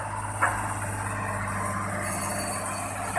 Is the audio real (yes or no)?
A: yes